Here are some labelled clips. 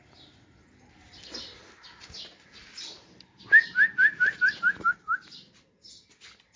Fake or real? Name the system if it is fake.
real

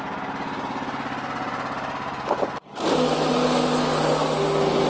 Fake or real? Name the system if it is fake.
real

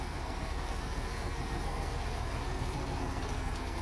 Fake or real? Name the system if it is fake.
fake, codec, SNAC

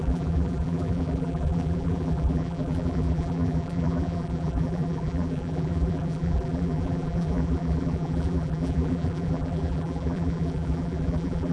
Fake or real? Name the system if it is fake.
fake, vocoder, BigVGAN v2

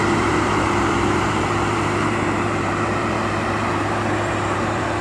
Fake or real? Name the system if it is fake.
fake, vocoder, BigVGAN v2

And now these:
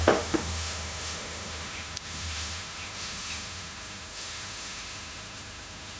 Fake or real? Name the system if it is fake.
fake, autoencoder, DAC-VAE